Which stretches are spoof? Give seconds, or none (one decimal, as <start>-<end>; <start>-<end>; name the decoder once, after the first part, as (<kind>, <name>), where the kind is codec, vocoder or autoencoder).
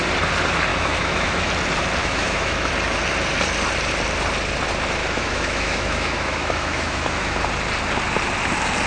0.7-1.5 (autoencoder, DAC-VAE); 2.0-2.7; 5.0-7.4